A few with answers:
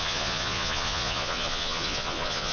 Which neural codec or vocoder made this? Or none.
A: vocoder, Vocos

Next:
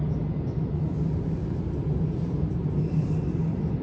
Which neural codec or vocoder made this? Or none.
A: none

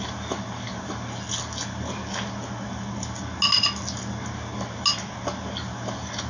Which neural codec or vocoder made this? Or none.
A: none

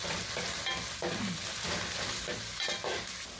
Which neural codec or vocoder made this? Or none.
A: none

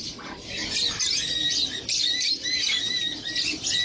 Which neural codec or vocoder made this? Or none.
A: none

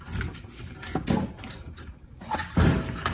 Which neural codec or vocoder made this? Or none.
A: none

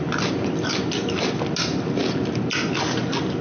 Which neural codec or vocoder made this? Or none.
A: none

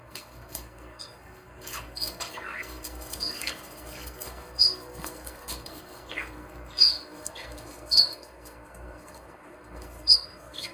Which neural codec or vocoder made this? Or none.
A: codec, SNAC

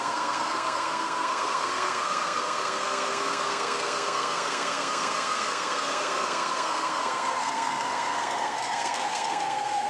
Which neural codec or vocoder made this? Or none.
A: codec, SNAC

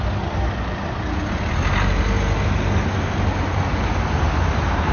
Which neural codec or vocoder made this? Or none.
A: none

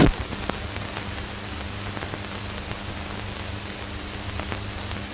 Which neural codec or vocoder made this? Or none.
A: none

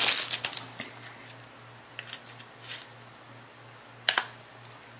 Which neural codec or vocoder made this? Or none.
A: none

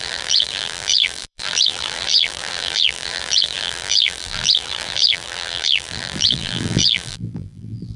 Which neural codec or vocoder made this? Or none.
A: vocoder, BigVGAN v2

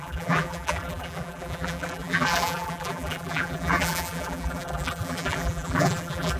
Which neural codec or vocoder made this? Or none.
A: vocoder, BigVGAN v2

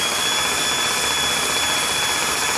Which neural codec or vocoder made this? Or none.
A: none